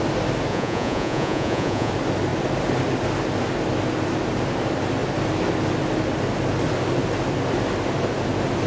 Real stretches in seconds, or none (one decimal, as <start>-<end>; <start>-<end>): 0.0-0.5; 1.9-8.7